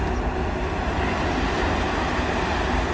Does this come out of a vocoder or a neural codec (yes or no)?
no